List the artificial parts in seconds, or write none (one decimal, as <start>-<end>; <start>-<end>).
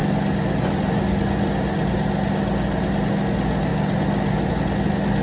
none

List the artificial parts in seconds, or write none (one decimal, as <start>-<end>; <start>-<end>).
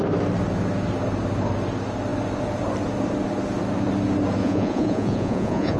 4.4-5.8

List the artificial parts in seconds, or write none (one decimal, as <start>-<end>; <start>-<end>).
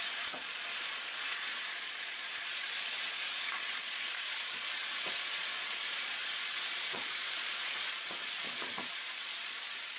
0.0-10.0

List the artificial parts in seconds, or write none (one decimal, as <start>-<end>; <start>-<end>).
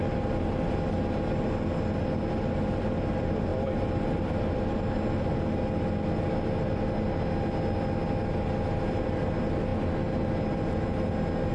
none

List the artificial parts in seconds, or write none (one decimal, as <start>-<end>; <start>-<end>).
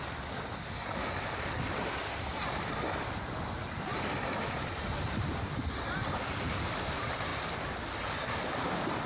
none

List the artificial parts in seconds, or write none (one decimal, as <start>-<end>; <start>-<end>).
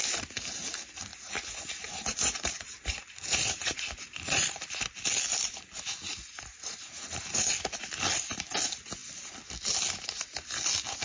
1.1-4.6; 6.5-7.5